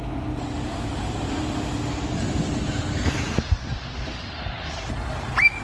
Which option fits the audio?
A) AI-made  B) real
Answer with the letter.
B